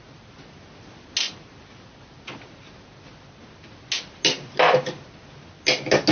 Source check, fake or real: real